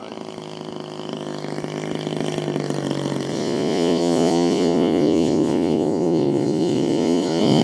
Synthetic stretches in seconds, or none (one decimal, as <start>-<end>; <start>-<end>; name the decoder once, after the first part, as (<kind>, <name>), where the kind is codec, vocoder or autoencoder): 3.3-7.6 (vocoder, Vocos)